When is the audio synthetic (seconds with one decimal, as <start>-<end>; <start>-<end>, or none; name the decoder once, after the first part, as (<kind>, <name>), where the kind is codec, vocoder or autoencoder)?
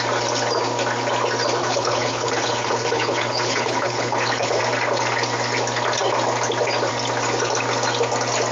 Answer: 1.6-4.6 (codec, HILCodec)